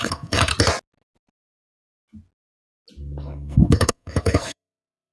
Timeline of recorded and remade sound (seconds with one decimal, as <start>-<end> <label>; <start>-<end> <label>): 0.0-0.5 remade; 0.5-3.2 recorded; 3.2-5.1 remade